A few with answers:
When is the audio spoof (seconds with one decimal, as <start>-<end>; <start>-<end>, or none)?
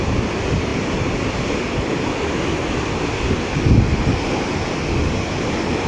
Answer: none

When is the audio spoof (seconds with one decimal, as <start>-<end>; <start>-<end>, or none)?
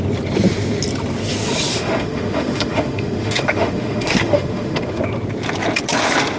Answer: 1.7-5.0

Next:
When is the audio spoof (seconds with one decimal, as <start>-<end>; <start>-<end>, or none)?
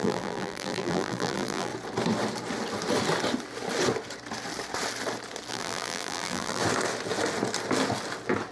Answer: 0.0-1.7; 5.5-6.6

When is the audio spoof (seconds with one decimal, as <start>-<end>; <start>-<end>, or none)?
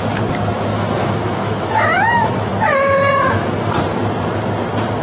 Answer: 0.7-3.7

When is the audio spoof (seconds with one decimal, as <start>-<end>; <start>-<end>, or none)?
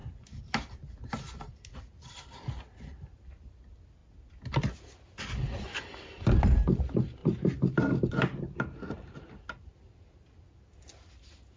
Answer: none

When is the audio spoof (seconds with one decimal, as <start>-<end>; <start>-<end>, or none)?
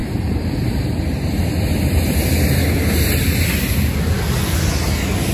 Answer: 0.0-1.0